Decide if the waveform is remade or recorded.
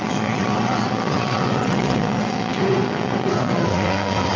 remade